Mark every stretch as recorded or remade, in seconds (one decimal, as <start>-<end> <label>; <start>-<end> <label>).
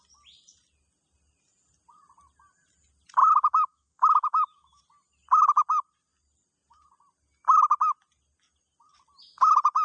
0.0-3.2 recorded; 3.2-4.8 remade; 4.8-9.8 recorded